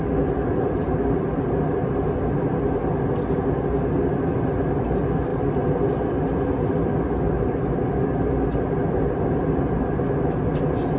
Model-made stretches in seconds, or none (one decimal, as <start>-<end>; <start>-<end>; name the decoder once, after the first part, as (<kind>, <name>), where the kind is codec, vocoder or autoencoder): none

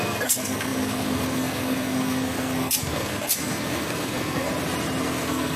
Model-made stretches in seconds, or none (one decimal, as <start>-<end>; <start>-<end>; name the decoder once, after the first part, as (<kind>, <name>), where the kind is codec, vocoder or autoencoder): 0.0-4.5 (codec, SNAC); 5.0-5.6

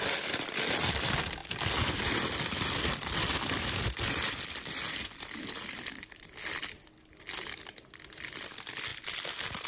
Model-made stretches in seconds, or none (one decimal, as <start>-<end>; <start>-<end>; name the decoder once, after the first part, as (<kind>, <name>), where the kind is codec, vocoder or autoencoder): 1.4-5.9 (vocoder, BigVGAN v2); 8.9-9.7

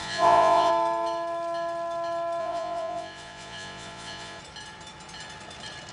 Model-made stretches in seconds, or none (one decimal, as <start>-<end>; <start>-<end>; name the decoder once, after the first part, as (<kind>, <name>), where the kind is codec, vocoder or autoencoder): 0.0-0.7 (vocoder, Vocos); 2.4-4.4